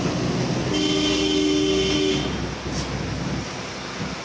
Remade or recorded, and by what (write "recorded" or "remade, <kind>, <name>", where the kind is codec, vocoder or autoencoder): recorded